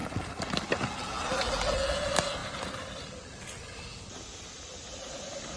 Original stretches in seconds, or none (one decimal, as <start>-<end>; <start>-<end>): 0.0-5.6